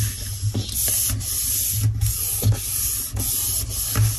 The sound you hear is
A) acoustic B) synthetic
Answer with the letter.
A